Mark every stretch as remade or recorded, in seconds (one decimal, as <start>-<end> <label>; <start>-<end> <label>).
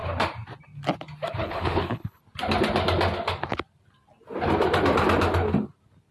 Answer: 0.0-1.4 recorded; 1.4-2.2 remade; 2.2-6.1 recorded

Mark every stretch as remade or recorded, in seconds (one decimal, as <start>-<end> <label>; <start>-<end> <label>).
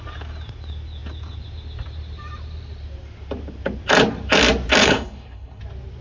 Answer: 0.0-4.8 recorded; 4.8-5.6 remade; 5.6-6.0 recorded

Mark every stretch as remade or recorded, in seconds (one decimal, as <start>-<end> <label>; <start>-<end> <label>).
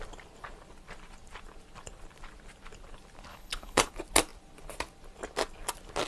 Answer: 0.0-3.3 recorded; 3.3-3.9 remade; 3.9-6.1 recorded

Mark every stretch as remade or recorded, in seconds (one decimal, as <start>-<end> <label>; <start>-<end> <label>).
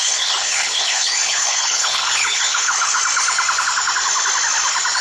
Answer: 0.0-3.0 remade; 3.0-5.0 recorded